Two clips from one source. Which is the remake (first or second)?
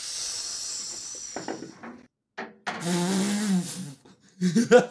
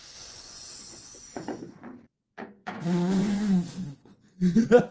second